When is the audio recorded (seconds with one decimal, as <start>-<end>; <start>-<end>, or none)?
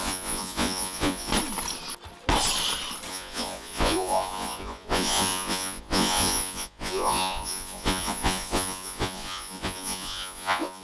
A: 1.3-3.1